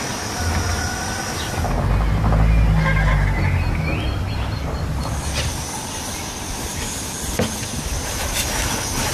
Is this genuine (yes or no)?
yes